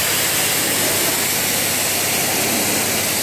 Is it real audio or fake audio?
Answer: real